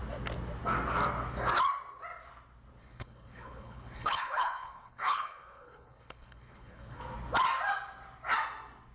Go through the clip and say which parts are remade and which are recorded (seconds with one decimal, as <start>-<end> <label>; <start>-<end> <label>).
0.0-2.8 recorded; 2.8-7.0 remade; 7.0-8.9 recorded